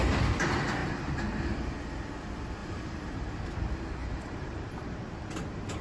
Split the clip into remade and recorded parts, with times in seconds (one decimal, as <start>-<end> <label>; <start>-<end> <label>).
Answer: 0.0-2.6 recorded; 2.6-3.3 remade; 3.3-4.0 recorded; 4.0-4.7 remade; 4.7-5.8 recorded